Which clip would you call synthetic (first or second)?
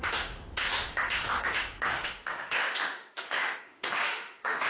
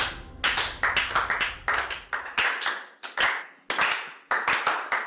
first